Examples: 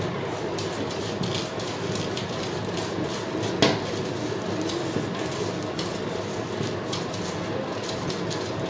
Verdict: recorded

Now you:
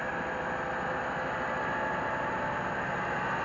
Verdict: recorded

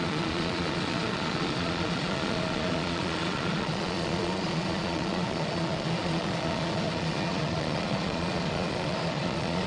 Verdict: remade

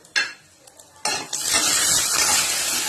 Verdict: recorded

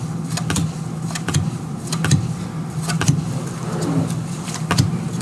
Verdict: recorded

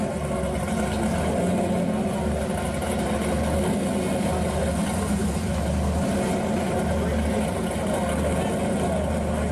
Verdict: recorded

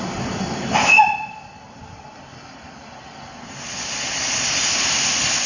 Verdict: recorded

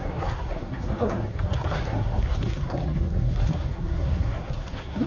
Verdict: remade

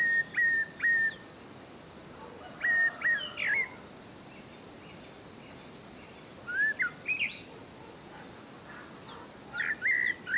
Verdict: recorded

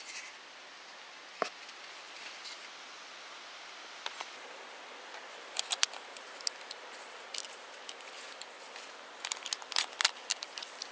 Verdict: recorded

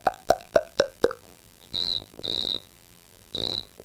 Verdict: remade